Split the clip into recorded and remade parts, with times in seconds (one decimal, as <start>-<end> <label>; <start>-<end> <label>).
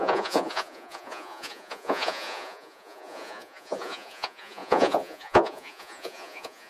0.0-6.7 remade